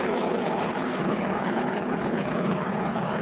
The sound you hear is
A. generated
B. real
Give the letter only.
A